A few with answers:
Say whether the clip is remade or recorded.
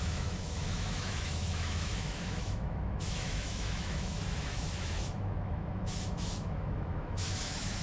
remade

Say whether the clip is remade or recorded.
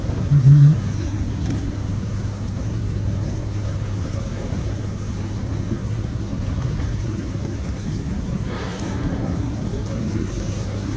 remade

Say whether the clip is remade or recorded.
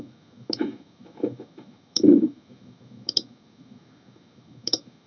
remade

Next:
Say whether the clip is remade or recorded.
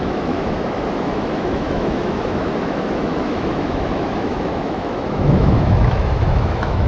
remade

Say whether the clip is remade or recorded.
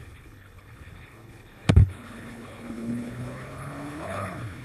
remade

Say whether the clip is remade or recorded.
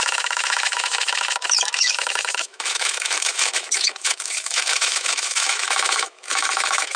remade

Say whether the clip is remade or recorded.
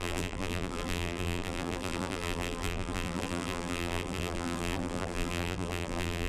remade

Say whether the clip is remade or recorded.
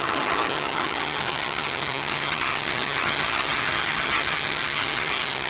remade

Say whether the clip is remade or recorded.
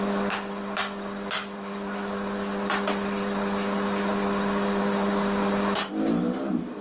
remade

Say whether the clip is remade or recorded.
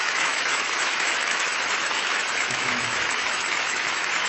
remade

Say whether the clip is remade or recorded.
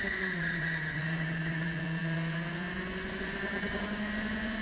remade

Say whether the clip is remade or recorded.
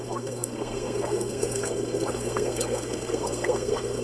remade